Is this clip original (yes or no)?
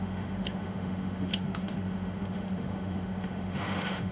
no